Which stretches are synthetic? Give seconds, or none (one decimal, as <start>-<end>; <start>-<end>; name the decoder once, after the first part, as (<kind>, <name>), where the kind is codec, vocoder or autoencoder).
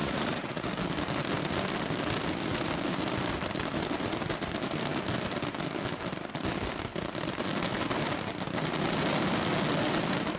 0.0-0.7 (vocoder, Vocos)